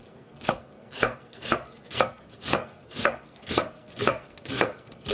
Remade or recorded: remade